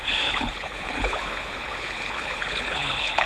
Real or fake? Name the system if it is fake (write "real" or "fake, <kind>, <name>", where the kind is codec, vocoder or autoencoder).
fake, codec, HILCodec